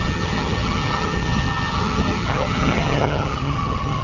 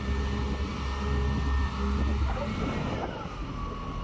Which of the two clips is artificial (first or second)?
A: first